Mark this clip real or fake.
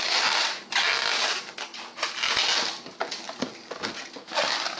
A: real